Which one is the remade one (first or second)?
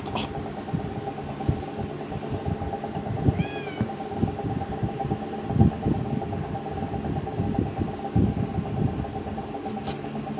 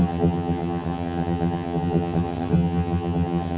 second